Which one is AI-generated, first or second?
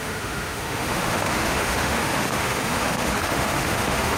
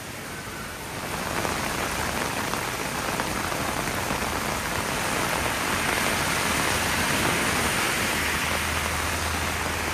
first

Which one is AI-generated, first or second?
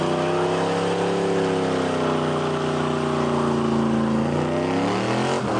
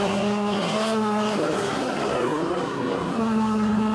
second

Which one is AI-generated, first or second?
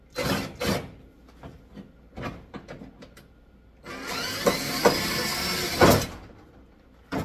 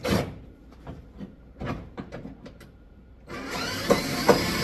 second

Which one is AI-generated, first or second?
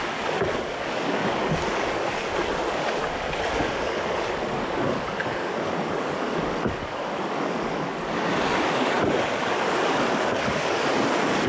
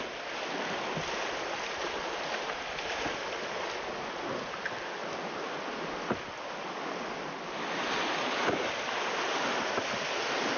first